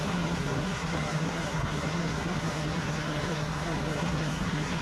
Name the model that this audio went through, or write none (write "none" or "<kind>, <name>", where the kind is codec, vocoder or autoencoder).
codec, SNAC